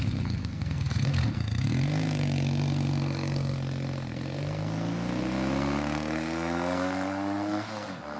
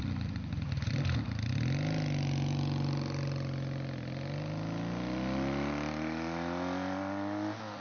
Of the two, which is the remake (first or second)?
first